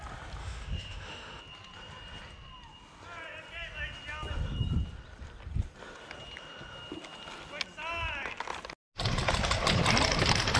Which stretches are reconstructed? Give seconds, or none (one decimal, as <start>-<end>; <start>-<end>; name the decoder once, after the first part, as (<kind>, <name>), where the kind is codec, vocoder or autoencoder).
0.4-1.4 (autoencoder, DAC-VAE)